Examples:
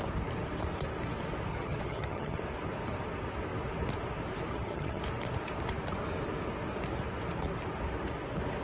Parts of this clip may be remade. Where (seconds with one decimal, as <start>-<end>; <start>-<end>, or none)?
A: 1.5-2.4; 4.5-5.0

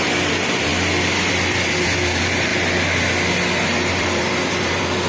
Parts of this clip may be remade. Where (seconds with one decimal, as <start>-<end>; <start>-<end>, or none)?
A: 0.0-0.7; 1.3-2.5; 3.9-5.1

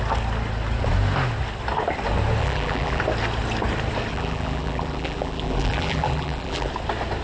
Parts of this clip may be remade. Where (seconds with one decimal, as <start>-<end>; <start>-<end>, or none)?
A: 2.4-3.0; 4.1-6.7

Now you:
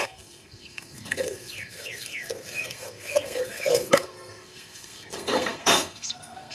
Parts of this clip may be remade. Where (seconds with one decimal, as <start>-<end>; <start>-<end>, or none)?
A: 0.0-6.5

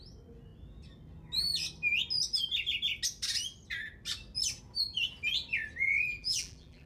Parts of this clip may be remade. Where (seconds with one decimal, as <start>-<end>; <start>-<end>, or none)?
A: 6.1-6.9

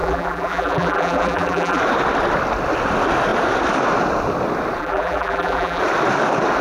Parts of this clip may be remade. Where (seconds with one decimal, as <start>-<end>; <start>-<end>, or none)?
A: 0.0-1.8; 4.8-5.8

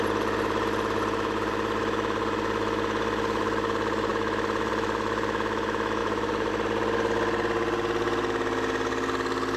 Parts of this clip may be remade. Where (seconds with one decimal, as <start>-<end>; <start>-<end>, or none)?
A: 6.0-6.5